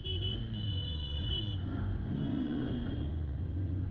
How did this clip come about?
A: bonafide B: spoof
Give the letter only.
B